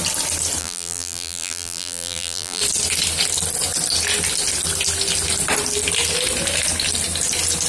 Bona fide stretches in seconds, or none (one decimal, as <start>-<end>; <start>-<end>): 0.0-0.6; 2.6-7.7